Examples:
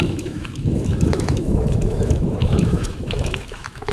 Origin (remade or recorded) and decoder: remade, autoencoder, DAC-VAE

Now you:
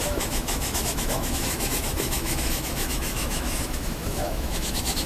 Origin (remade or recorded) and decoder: remade, autoencoder, DAC-VAE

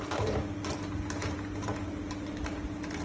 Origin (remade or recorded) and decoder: recorded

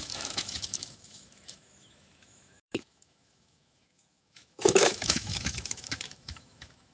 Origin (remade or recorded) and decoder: remade, autoencoder, DAC-VAE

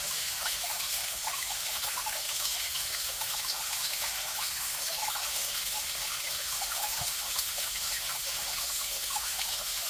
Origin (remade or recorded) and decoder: remade, autoencoder, DAC-VAE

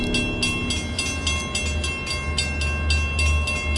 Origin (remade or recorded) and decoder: recorded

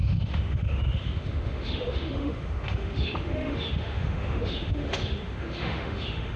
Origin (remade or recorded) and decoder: remade, autoencoder, DAC-VAE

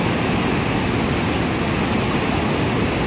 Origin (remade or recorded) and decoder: recorded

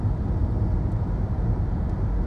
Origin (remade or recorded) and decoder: recorded